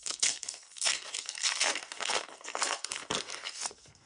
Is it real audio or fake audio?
fake